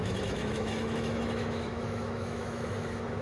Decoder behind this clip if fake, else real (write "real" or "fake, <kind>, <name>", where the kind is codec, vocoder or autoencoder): fake, autoencoder, DAC-VAE